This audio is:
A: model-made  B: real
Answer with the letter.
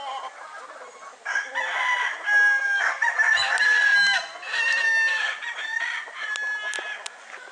B